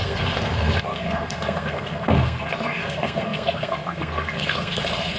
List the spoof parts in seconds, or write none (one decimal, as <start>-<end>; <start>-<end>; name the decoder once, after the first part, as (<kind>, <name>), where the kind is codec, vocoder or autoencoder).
0.0-5.2 (codec, SNAC)